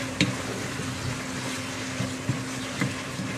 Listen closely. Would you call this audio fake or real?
real